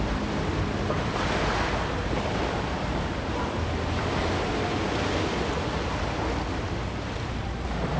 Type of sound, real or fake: real